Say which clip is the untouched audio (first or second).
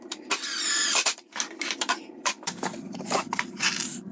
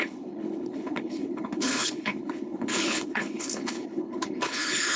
first